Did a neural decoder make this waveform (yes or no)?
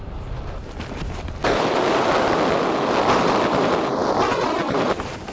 no